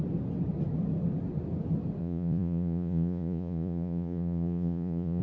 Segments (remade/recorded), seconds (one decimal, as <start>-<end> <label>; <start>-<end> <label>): 0.0-2.0 recorded; 2.0-5.2 remade